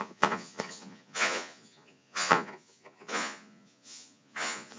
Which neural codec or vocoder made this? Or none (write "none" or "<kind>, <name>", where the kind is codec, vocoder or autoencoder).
vocoder, Vocos